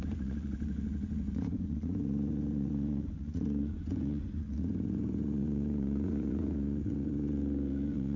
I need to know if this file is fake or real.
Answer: fake